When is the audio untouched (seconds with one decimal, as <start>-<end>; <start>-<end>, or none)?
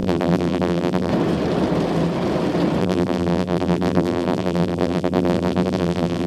1.1-2.8